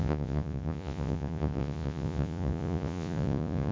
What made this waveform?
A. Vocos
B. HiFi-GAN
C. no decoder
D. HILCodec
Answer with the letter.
A